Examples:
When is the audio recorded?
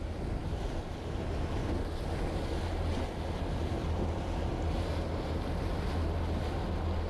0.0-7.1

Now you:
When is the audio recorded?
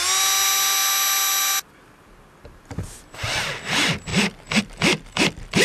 0.0-5.6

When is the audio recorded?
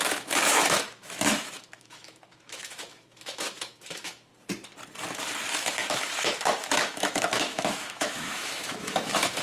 4.3-5.5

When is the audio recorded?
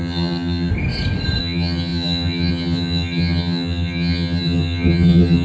0.7-1.4